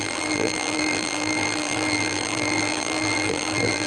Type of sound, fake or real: fake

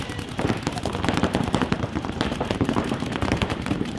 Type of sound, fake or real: fake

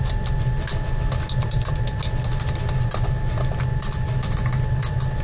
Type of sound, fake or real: real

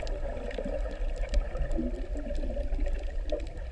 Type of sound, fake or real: real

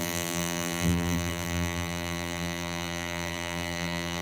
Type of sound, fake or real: fake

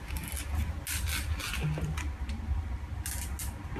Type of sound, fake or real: real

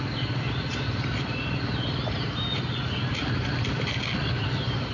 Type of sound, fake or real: fake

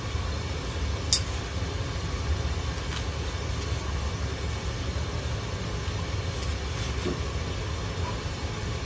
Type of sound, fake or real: real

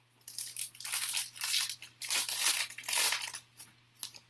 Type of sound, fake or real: real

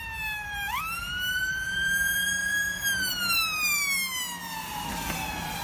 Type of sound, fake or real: fake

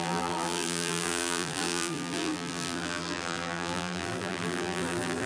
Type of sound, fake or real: fake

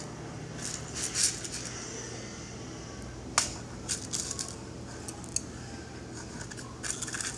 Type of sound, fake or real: real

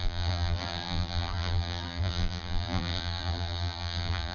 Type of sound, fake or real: fake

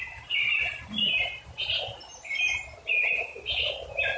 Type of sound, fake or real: fake